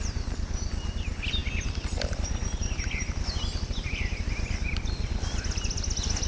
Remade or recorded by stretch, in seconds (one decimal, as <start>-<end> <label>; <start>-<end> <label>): 0.0-6.3 recorded